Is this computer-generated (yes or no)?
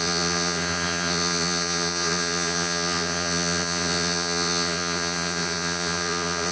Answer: yes